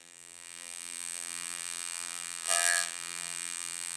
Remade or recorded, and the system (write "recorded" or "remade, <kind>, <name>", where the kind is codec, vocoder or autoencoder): remade, vocoder, BigVGAN v2